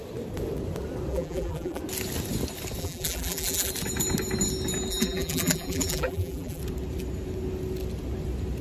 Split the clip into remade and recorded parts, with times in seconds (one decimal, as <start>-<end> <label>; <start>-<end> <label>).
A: 0.0-1.1 recorded; 1.1-1.8 remade; 1.8-2.8 recorded; 2.8-3.7 remade; 3.7-4.9 recorded; 4.9-6.6 remade; 6.6-8.6 recorded